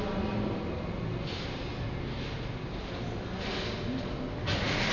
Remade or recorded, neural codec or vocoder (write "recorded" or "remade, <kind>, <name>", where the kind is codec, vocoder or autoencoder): recorded